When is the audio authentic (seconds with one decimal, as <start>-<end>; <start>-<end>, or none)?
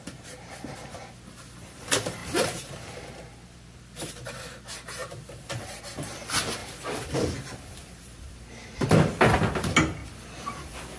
0.0-2.2; 4.6-5.0; 5.8-11.0